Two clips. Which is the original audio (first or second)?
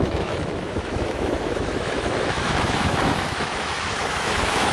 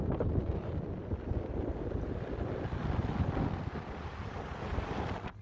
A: second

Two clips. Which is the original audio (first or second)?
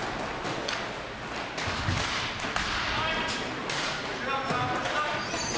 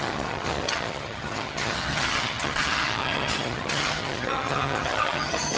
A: first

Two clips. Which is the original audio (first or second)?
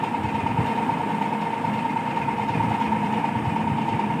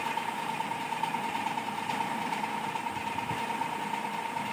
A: first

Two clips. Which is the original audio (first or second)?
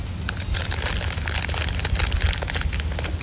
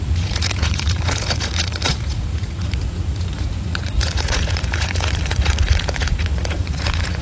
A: first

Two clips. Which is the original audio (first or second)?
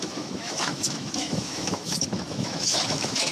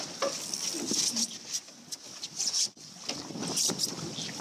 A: second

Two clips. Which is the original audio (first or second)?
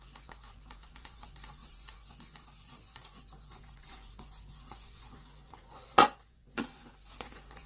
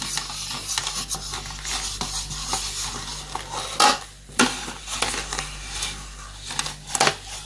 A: second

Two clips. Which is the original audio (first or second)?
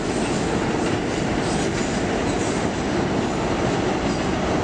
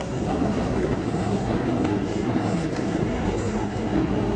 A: first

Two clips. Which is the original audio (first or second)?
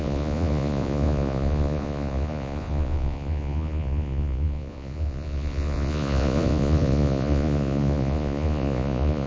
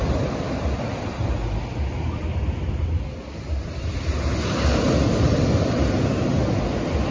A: second